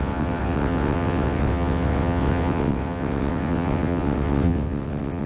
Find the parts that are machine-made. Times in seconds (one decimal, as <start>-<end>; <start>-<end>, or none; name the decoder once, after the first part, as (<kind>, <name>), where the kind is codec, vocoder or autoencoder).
0.0-5.3 (vocoder, WaveNeXt)